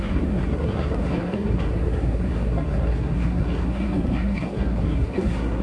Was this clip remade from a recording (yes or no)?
yes